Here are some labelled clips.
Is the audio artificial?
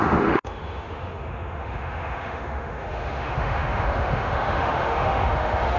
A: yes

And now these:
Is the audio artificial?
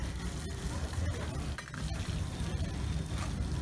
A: no